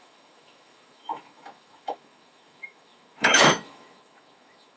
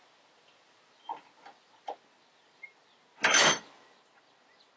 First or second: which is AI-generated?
first